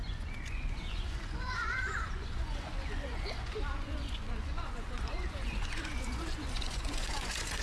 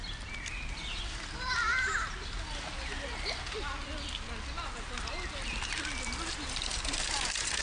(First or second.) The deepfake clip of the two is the first